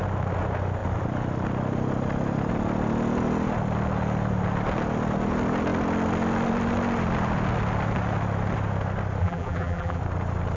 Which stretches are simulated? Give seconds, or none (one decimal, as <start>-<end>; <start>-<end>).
9.2-10.0